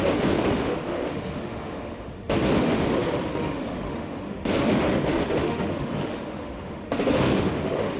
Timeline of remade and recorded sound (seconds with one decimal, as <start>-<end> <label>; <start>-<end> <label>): 0.0-8.0 remade